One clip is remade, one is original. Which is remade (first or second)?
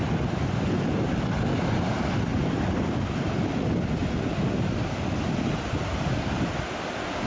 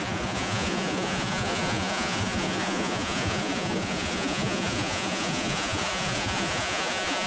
second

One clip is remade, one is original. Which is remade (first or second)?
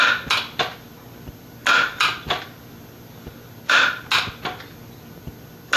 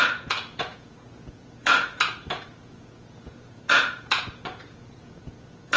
second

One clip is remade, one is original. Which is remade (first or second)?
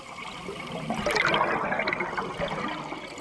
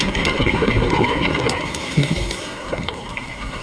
second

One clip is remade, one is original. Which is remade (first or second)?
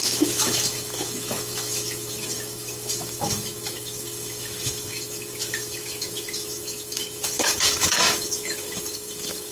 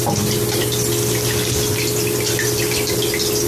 first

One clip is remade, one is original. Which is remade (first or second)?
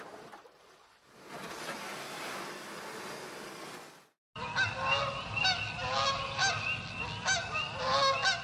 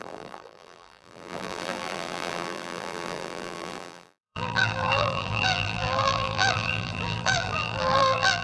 second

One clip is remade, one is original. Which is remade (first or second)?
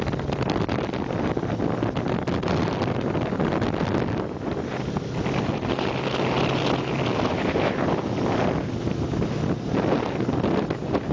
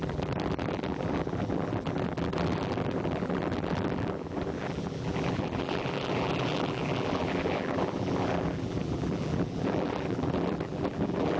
second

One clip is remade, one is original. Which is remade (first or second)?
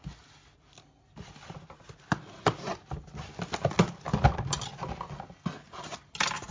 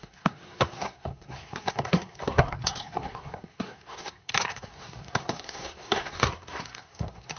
second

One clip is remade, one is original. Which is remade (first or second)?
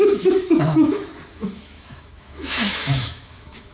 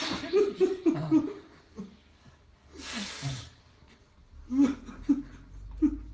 first